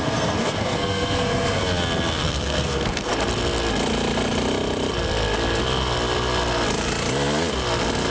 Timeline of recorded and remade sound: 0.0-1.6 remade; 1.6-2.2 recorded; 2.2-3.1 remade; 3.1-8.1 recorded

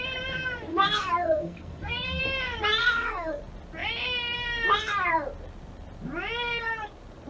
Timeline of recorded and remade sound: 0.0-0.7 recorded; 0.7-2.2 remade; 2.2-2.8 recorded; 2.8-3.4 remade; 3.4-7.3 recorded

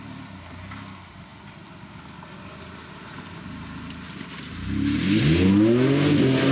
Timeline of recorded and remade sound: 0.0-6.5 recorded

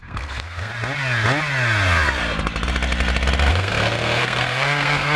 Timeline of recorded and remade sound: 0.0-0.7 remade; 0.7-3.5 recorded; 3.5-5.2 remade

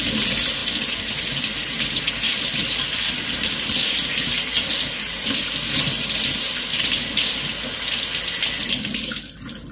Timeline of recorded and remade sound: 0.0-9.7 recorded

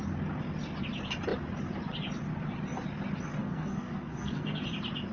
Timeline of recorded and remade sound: 0.0-3.4 recorded; 3.4-4.6 remade; 4.6-5.1 recorded

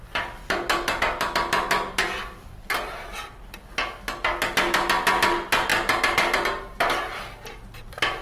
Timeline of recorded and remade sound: 0.0-8.2 recorded